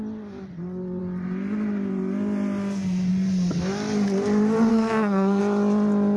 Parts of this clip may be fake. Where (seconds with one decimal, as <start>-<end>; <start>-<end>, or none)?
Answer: 4.7-5.4